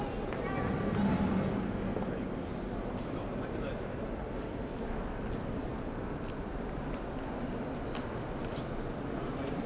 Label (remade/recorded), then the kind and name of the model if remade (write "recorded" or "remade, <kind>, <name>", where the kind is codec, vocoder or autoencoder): recorded